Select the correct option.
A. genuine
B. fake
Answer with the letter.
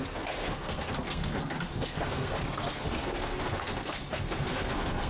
B